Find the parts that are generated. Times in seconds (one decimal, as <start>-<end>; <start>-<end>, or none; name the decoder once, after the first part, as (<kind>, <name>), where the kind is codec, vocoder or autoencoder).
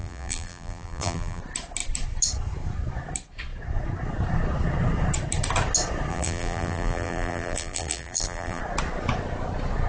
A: 0.0-1.4 (vocoder, BigVGAN v2); 6.1-8.6